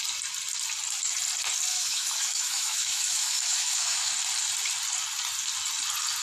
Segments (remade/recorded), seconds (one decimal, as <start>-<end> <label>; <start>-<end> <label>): 0.0-1.7 recorded; 1.7-4.1 remade; 4.1-6.2 recorded

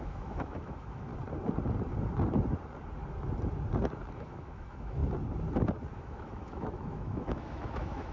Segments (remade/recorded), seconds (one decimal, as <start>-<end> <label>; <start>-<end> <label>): 0.0-1.1 remade; 1.1-4.1 recorded; 4.1-5.0 remade; 5.0-5.9 recorded; 5.9-8.1 remade

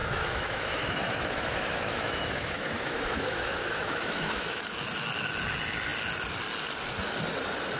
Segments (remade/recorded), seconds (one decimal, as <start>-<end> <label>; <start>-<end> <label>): 0.0-4.6 remade; 4.6-7.8 recorded

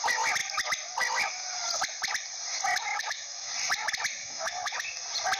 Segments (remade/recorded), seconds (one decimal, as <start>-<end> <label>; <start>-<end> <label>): 0.0-2.9 recorded; 2.9-3.5 remade; 3.5-4.2 recorded; 4.2-4.8 remade; 4.8-5.4 recorded

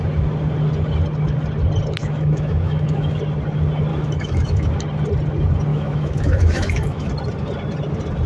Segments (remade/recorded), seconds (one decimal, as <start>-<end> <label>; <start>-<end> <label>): 0.0-2.0 recorded; 2.0-3.2 remade; 3.2-3.9 recorded; 3.9-4.7 remade; 4.7-5.7 recorded; 5.7-7.1 remade; 7.1-8.3 recorded

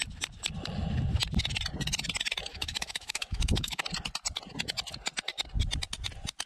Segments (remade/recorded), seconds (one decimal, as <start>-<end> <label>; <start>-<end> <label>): 0.0-2.5 recorded; 2.5-3.8 remade; 3.8-6.5 recorded

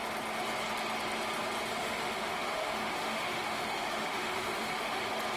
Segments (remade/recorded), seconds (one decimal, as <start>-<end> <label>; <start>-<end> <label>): 0.0-1.8 recorded; 1.8-5.0 remade; 5.0-5.4 recorded

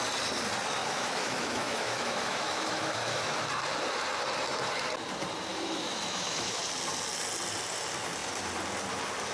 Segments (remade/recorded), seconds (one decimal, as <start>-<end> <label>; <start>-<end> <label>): 0.0-0.8 recorded; 0.8-3.4 remade; 3.4-5.5 recorded; 5.5-6.6 remade; 6.6-9.3 recorded